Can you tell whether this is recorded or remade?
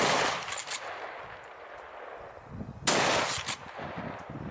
recorded